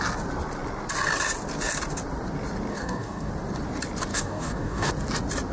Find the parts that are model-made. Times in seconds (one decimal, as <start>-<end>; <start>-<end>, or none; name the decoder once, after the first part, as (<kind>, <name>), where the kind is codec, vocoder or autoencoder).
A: 2.7-3.3 (codec, DAC); 4.1-4.9